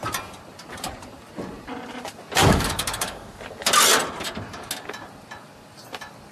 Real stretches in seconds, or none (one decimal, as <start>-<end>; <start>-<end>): 0.0-2.4; 3.4-6.3